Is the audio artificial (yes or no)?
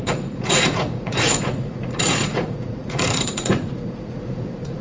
yes